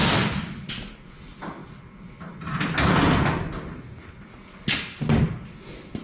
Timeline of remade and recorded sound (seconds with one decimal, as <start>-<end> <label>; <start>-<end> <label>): 0.0-1.6 remade; 1.6-5.2 recorded; 5.2-6.0 remade